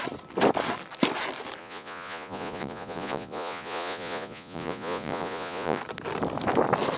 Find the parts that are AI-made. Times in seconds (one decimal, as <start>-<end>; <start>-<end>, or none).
1.6-5.8